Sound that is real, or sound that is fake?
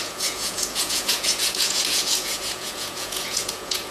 fake